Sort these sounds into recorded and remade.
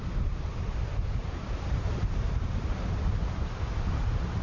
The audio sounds remade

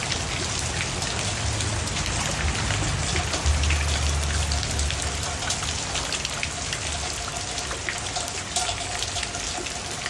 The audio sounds recorded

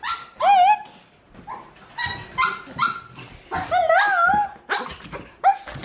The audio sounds recorded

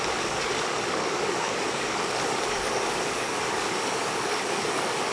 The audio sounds remade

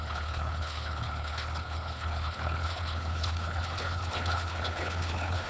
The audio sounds remade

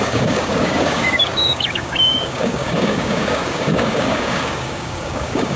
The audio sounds remade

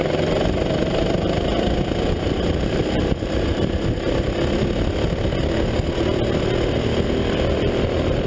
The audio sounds recorded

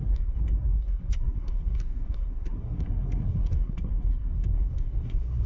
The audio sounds remade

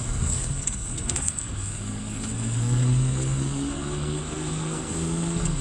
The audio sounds remade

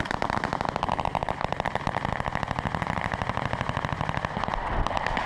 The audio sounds recorded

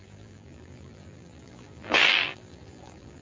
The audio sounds remade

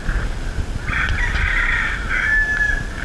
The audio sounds recorded